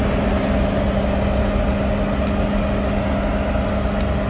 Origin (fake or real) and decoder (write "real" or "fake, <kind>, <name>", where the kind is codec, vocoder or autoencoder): real